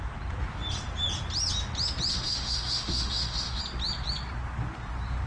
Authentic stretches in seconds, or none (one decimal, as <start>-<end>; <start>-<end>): 0.0-2.1; 3.6-5.3